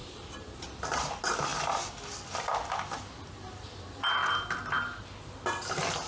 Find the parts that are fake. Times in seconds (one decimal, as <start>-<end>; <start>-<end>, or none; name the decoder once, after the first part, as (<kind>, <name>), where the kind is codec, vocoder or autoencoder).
none